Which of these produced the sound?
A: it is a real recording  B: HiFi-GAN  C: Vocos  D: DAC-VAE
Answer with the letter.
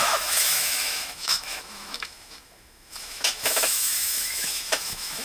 D